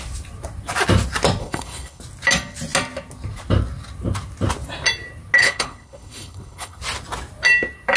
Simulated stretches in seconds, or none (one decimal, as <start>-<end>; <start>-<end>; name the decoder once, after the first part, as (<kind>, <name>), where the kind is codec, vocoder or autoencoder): 1.4-2.0 (codec, HILCodec); 5.4-6.8